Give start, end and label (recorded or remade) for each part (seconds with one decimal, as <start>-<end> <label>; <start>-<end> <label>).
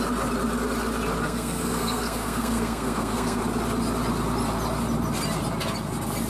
0.0-1.2 recorded; 1.2-3.4 remade; 3.4-6.3 recorded